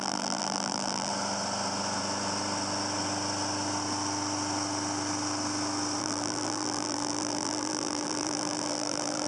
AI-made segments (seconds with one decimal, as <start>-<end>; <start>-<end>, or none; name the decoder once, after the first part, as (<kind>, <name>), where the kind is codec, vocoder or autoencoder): 0.0-1.1 (vocoder, BigVGAN v2); 6.0-9.3